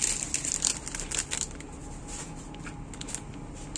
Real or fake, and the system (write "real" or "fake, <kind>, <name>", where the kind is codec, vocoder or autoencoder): real